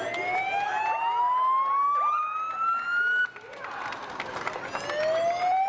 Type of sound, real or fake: real